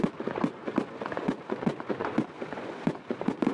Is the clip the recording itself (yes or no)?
no